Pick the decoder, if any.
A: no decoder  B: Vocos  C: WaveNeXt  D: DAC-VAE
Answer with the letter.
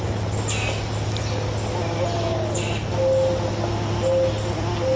A